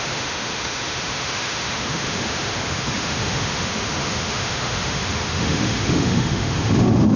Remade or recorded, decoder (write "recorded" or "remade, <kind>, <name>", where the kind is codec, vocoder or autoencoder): remade, autoencoder, DAC-VAE